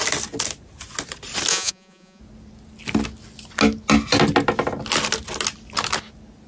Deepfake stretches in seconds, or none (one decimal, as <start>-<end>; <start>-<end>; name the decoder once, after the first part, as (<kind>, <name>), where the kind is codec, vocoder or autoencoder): 1.5-2.2 (vocoder, Vocos)